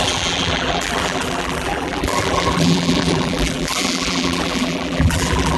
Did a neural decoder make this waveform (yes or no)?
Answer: yes